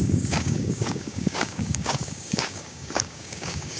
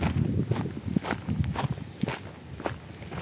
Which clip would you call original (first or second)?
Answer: second